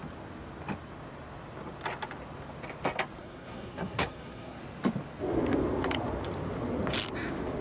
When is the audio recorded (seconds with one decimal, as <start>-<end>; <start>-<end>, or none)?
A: 0.0-3.2; 4.6-7.6

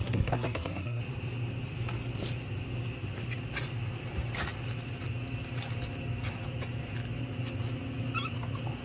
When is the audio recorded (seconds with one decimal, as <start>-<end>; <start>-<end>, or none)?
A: 1.0-8.8

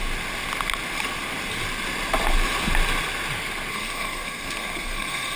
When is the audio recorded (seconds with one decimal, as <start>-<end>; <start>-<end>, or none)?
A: 0.0-3.7

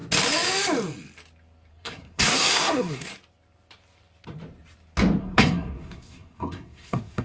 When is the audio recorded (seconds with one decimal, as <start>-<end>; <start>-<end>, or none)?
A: 0.0-1.7; 3.1-5.2